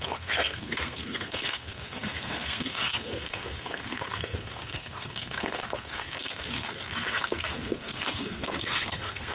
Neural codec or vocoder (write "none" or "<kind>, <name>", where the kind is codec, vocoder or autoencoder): codec, SNAC